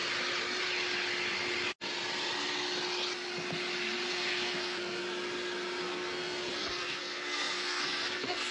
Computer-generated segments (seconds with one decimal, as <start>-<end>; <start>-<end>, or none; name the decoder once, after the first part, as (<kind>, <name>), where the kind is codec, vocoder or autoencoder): 4.1-5.0 (codec, SNAC); 5.8-8.5